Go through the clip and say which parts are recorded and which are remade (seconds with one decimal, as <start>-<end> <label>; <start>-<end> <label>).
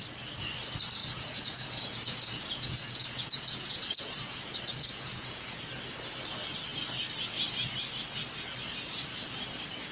0.0-1.0 recorded; 1.0-5.6 remade; 5.6-9.9 recorded